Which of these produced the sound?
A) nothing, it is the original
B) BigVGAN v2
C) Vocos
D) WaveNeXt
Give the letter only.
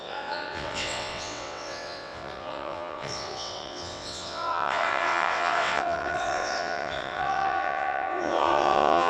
D